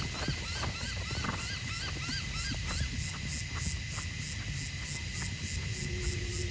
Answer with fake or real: real